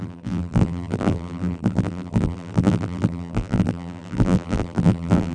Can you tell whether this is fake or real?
fake